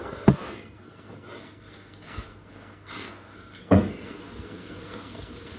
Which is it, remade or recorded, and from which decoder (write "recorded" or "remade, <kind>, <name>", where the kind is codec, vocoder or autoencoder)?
remade, codec, SNAC